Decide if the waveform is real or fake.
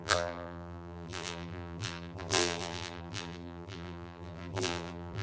fake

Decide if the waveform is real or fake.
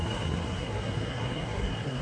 fake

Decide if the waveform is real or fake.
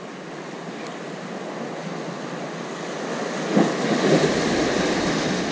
real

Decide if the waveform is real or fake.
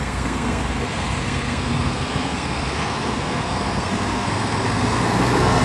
fake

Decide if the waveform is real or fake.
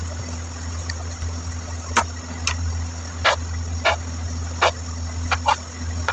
real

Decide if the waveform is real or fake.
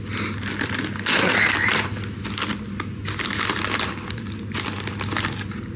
real